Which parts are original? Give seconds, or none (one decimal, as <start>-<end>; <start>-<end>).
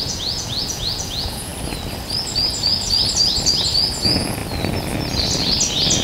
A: 1.5-4.0; 4.4-6.0